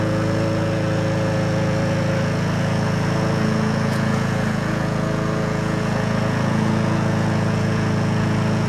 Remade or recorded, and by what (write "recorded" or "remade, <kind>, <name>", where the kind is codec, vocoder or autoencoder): remade, vocoder, Vocos